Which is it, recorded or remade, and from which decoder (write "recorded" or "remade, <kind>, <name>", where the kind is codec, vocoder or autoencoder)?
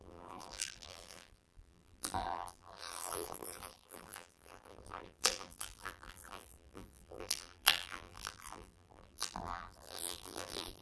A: remade, vocoder, BigVGAN v2